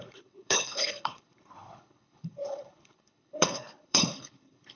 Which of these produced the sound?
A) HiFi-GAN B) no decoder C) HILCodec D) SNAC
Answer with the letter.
C